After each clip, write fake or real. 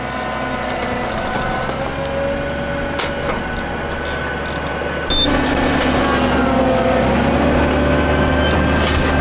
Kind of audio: real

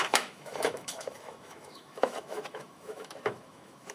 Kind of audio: fake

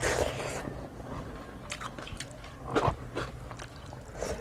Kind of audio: fake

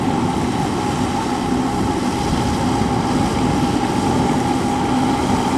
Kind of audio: real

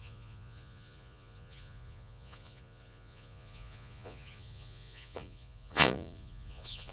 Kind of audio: fake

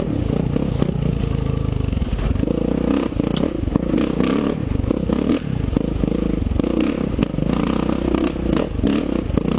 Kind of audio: real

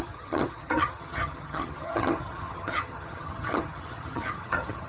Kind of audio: fake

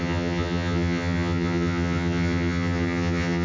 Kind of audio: fake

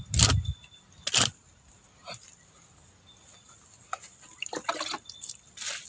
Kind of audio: real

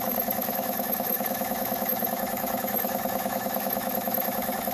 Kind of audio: fake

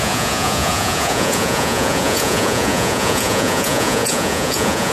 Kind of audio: fake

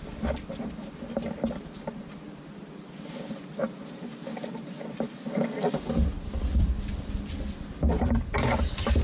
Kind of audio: real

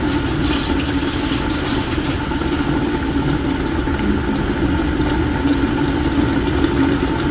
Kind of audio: real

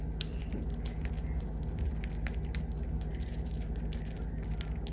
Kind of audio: real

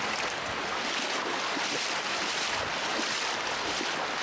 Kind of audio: real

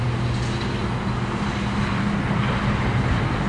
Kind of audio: real